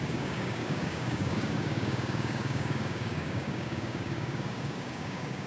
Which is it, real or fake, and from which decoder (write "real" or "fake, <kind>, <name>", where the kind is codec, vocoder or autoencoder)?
fake, codec, DAC